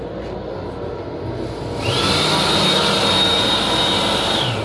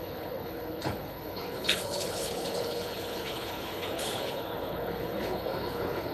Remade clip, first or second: second